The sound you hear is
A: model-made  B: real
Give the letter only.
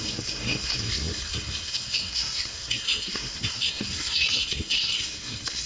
A